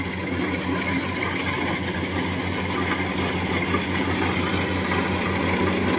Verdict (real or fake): real